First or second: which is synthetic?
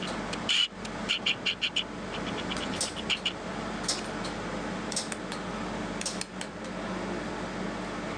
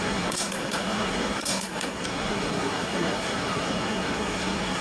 second